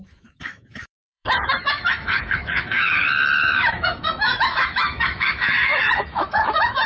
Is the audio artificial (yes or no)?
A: yes